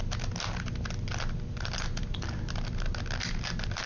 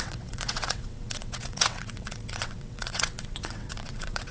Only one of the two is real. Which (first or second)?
first